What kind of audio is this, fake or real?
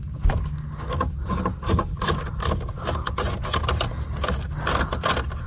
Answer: real